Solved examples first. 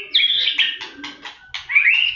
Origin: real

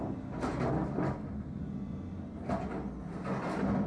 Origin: real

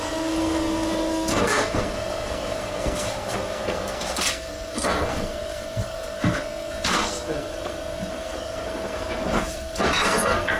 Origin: fake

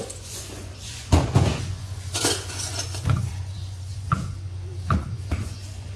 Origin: fake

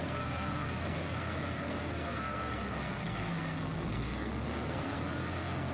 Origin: fake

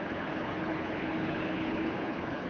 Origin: fake